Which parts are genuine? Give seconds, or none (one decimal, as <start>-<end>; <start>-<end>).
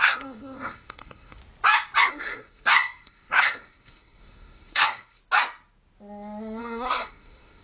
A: 1.4-2.1; 5.2-6.6